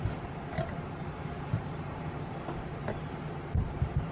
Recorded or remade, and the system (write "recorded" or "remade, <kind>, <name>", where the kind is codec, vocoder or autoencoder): recorded